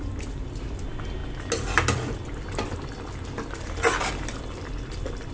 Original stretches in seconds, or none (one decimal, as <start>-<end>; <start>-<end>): 0.0-5.3